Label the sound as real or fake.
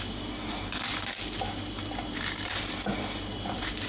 real